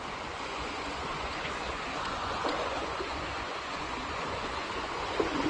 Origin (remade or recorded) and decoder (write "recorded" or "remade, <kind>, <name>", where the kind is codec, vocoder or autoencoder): remade, vocoder, Vocos